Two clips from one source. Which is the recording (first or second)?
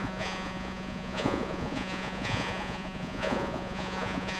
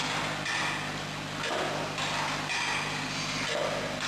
second